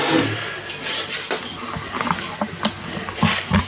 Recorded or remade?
recorded